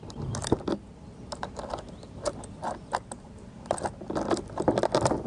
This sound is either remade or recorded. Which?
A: recorded